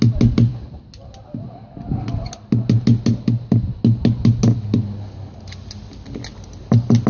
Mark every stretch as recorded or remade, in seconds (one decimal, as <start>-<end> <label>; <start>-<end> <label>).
0.0-7.1 recorded